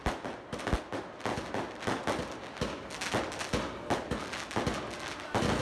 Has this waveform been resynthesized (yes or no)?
no